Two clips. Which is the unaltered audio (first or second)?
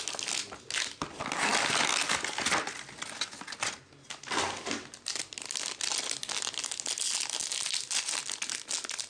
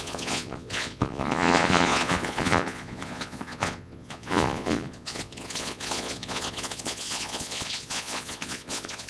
first